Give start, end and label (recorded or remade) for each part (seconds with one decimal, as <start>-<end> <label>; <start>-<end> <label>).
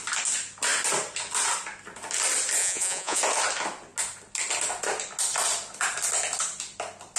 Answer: 0.0-2.6 recorded; 2.6-3.2 remade; 3.2-7.2 recorded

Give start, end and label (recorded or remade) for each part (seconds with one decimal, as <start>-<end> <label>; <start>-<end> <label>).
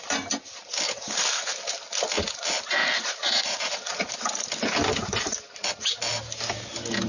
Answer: 0.0-2.8 recorded; 2.8-4.1 remade; 4.1-7.1 recorded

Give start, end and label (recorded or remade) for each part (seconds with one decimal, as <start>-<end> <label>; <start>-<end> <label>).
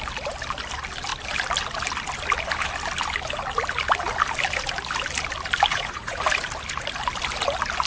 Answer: 0.0-5.7 recorded; 5.7-6.2 remade; 6.2-7.9 recorded